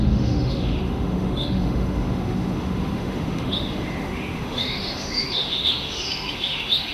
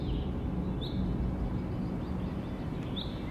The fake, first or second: first